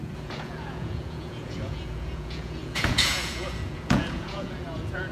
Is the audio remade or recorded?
remade